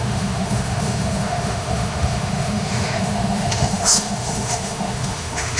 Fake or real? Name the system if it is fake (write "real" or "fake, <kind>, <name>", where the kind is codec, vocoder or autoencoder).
fake, autoencoder, DAC-VAE